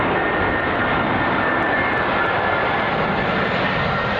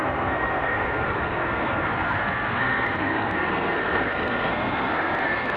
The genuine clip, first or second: first